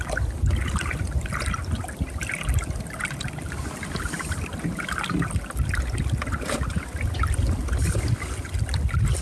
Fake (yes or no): no